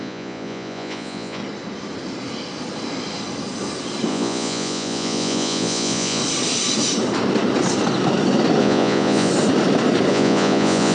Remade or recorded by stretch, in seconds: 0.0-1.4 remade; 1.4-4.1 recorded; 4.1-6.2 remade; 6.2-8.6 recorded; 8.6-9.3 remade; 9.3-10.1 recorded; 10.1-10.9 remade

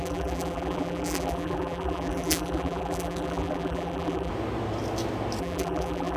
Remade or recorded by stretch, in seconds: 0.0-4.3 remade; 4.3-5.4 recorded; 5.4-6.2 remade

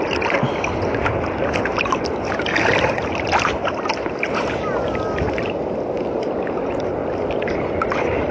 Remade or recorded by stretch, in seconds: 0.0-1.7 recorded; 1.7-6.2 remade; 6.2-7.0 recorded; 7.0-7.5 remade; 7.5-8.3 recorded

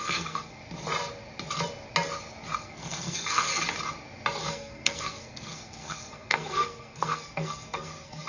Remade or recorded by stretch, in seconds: 0.0-0.6 remade; 0.6-2.6 recorded; 2.6-3.5 remade; 3.5-4.4 recorded; 4.4-8.3 remade

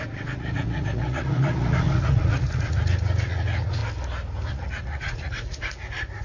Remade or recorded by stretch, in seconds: 0.0-3.8 remade; 3.8-4.5 recorded; 4.5-6.2 remade

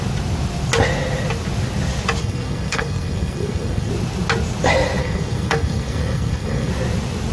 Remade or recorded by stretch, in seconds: 0.0-2.2 recorded; 2.2-3.9 remade; 3.9-5.0 recorded; 5.0-6.7 remade; 6.7-7.3 recorded